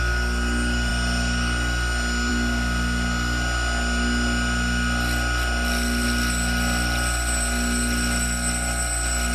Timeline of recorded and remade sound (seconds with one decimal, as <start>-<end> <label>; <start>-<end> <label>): 0.0-9.3 recorded